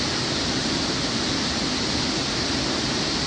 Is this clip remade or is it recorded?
recorded